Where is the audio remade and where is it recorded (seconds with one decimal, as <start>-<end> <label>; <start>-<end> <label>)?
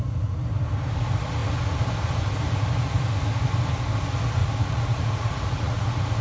0.0-4.4 recorded; 4.4-6.2 remade